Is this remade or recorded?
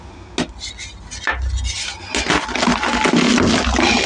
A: recorded